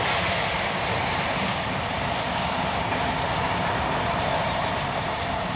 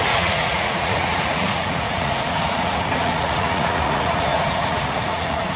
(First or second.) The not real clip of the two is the second